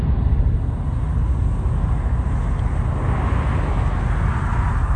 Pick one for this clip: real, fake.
real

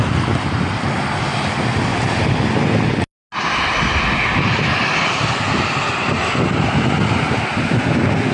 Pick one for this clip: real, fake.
real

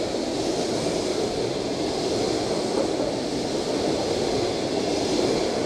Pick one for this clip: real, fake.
real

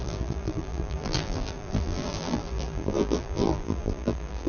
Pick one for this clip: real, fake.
fake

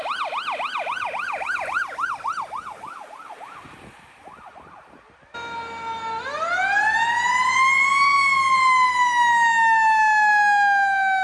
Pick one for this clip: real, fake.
real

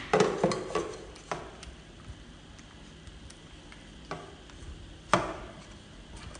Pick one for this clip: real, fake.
real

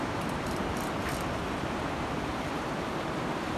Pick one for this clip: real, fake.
fake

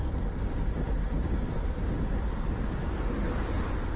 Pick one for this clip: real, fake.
real